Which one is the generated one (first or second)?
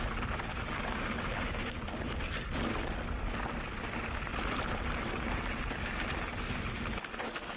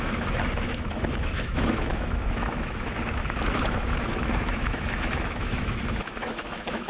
second